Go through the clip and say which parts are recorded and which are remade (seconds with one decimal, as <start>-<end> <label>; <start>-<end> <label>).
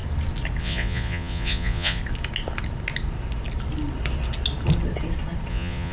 0.0-0.6 recorded; 0.6-2.0 remade; 2.0-5.5 recorded; 5.5-5.9 remade